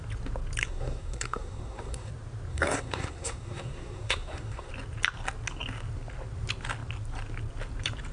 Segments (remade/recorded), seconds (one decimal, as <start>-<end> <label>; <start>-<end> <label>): 0.0-0.6 recorded; 0.6-2.1 remade; 2.1-2.5 recorded; 2.5-4.7 remade; 4.7-8.1 recorded